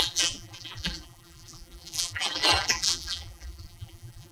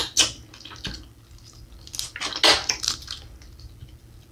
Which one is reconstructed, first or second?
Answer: first